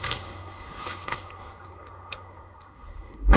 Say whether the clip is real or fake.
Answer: fake